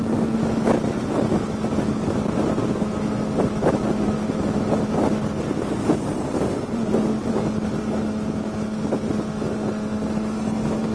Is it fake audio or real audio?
real